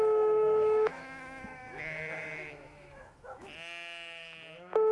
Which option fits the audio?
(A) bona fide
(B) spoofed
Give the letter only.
B